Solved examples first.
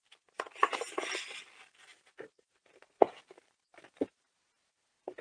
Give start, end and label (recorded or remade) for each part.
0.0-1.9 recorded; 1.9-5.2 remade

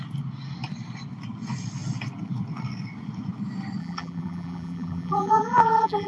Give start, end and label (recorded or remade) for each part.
0.0-3.8 recorded; 3.8-6.1 remade

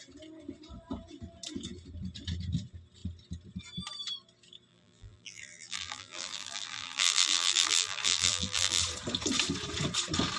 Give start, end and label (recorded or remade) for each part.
0.0-4.7 recorded; 4.7-8.8 remade; 8.8-10.4 recorded

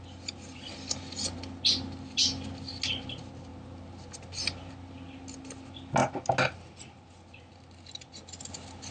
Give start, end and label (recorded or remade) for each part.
0.0-8.9 recorded

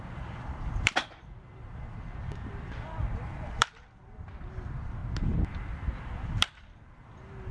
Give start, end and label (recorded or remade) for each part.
0.0-5.0 remade; 5.0-5.5 recorded; 5.5-7.5 remade

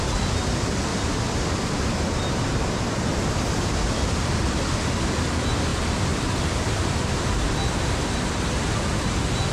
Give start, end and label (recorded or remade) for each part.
0.0-0.9 recorded; 0.9-2.6 remade; 2.6-3.1 recorded; 3.1-4.3 remade; 4.3-5.7 recorded; 5.7-7.8 remade; 7.8-9.5 recorded

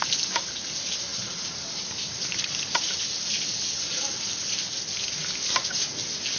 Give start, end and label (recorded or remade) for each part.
0.0-6.4 recorded

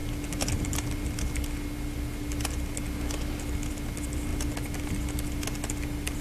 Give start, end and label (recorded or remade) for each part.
0.0-6.2 recorded